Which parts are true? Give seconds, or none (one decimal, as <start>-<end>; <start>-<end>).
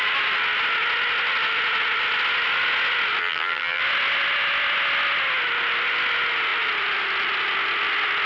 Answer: 0.0-3.2; 3.8-8.3